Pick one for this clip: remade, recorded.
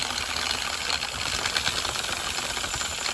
recorded